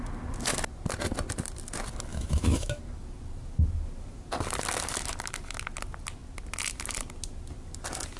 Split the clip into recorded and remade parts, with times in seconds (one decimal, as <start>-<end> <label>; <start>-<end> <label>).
0.0-2.1 recorded; 2.1-2.8 remade; 2.8-8.2 recorded